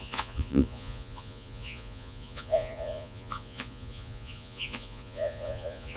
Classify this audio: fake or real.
fake